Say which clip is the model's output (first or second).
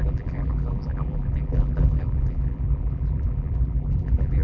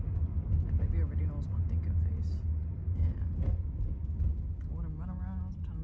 first